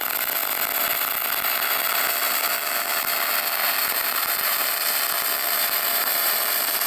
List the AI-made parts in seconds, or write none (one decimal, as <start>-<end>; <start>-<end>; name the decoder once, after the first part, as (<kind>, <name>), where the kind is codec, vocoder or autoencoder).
3.6-4.7 (vocoder, BigVGAN v2); 5.4-6.9